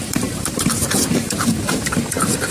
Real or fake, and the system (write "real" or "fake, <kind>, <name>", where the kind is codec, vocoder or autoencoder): fake, vocoder, BigVGAN v2